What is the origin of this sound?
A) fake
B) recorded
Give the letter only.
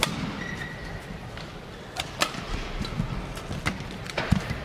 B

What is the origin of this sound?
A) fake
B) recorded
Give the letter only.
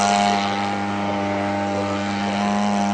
B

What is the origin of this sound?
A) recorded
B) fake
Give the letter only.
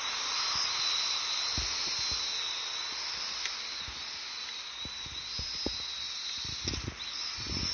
A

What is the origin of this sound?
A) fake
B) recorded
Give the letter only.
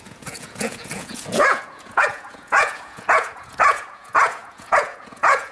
A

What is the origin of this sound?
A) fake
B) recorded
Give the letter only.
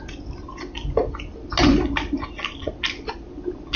B